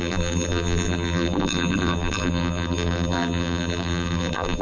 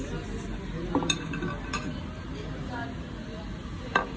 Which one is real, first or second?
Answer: second